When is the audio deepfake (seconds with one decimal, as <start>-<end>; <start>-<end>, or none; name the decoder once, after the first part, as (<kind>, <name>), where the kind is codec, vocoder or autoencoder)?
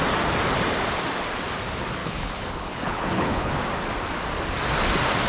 2.0-3.5 (codec, HILCodec)